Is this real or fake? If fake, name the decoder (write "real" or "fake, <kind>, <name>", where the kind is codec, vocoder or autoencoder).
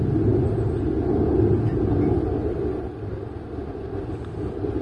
real